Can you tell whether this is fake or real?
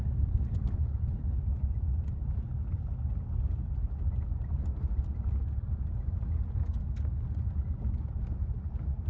real